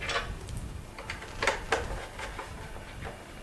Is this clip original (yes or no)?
yes